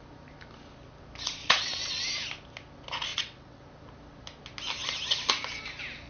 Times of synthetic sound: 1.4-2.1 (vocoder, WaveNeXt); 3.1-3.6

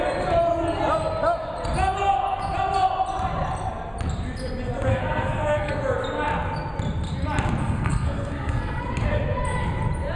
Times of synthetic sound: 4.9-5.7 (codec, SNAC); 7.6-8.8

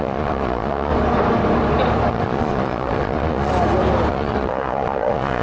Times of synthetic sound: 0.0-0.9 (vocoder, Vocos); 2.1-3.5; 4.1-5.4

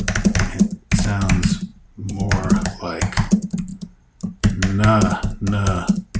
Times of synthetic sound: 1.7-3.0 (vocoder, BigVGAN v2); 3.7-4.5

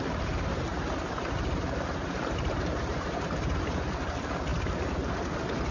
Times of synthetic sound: 0.7-4.1 (vocoder, BigVGAN v2)

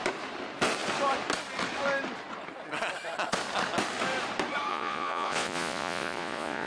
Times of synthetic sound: 4.7-6.7 (vocoder, Vocos)

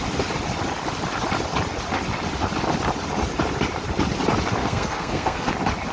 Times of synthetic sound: 4.6-5.5 (codec, SNAC)

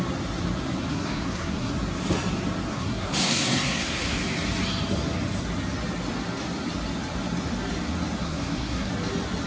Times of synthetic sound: 0.9-1.7 (codec, SNAC); 2.7-4.2; 8.2-8.9